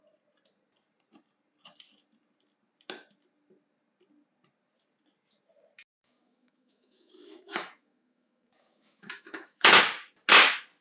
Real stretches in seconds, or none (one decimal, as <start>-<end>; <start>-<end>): 0.0-6.0; 9.8-10.8